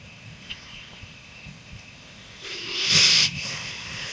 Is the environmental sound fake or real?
fake